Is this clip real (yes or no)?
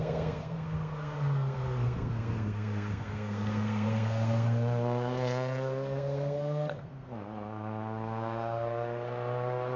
no